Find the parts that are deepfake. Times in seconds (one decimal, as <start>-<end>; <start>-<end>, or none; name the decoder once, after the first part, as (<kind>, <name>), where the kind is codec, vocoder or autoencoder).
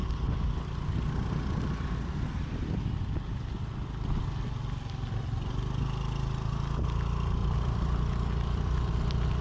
7.4-9.4 (vocoder, BigVGAN v2)